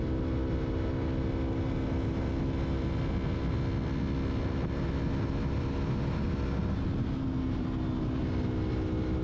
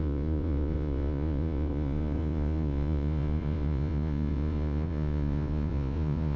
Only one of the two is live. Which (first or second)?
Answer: first